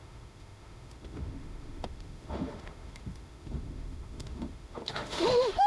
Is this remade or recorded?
remade